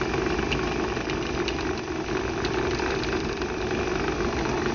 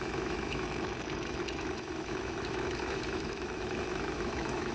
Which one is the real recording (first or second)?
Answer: first